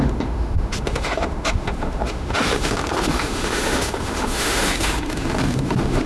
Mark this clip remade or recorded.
remade